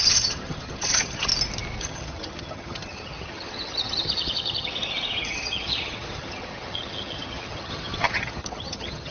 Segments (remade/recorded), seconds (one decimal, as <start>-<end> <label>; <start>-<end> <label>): 0.0-1.3 remade; 1.3-1.8 recorded; 1.8-4.7 remade; 4.7-5.2 recorded; 5.2-9.1 remade